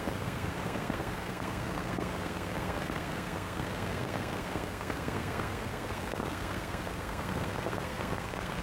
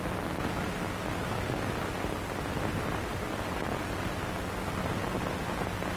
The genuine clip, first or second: second